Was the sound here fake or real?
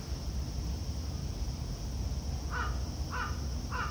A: real